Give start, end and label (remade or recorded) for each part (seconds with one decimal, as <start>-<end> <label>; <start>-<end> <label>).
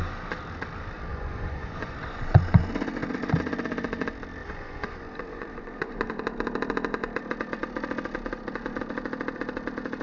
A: 0.0-1.1 recorded; 1.1-2.7 remade; 2.7-4.4 recorded; 4.4-6.1 remade; 6.1-10.0 recorded